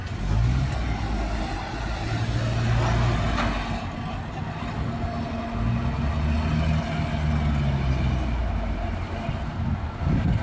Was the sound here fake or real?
real